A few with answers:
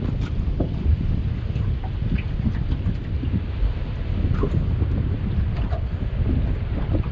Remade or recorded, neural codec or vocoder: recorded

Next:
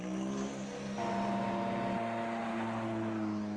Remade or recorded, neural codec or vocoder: recorded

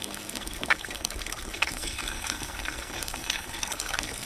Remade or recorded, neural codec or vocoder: remade, codec, SNAC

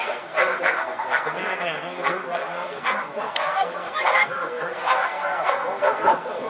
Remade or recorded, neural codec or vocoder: remade, codec, SNAC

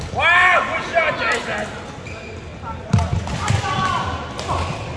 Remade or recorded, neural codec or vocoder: recorded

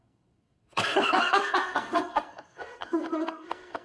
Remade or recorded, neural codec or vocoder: remade, codec, SNAC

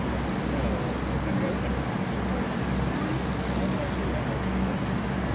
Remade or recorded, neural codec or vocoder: recorded